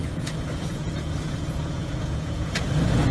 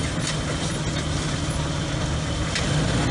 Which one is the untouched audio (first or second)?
second